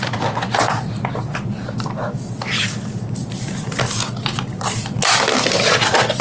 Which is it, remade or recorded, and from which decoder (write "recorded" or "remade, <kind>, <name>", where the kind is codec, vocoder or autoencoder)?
recorded